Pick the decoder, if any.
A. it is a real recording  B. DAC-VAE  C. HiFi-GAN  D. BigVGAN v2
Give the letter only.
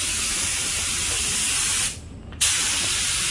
A